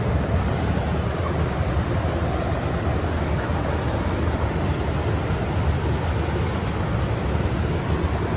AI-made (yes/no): no